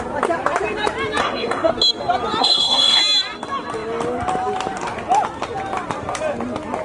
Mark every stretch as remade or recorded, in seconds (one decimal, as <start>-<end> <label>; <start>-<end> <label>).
0.0-1.2 recorded; 1.2-1.7 remade; 1.7-2.4 recorded; 2.4-3.0 remade; 3.0-6.8 recorded